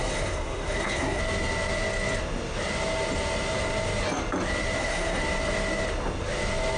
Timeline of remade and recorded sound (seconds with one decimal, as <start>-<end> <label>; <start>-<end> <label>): 0.0-1.2 remade; 1.2-4.8 recorded; 4.8-5.2 remade; 5.2-6.8 recorded